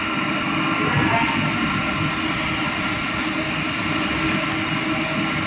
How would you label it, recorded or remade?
recorded